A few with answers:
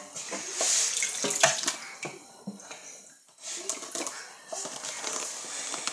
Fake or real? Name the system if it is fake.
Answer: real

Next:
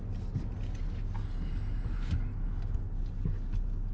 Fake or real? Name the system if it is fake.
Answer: real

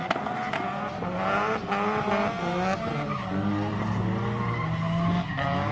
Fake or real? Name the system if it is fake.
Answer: real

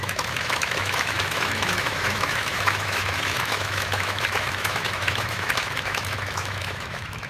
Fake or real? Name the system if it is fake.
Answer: fake, autoencoder, DAC-VAE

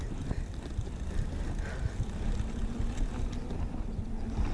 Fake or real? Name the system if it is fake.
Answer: real